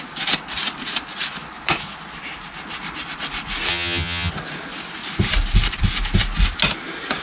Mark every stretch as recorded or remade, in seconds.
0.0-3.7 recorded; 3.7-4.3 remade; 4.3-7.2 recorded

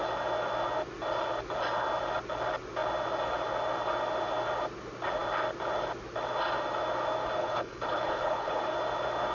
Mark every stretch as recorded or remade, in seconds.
0.0-7.4 recorded; 7.4-8.6 remade; 8.6-9.3 recorded

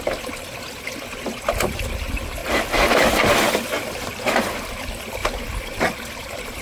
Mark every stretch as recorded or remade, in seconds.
0.0-6.6 recorded

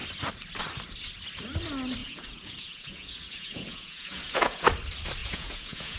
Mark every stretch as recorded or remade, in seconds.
0.0-2.0 recorded; 2.0-4.7 remade; 4.7-5.2 recorded; 5.2-6.0 remade

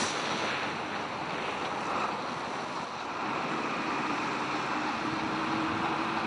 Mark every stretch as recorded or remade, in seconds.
0.0-6.3 recorded

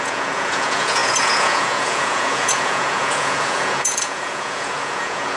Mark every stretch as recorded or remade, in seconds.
0.0-5.4 remade